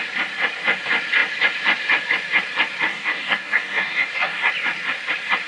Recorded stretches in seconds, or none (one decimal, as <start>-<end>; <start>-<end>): 0.0-2.9; 4.5-5.5